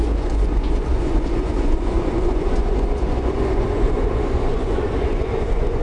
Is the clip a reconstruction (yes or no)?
yes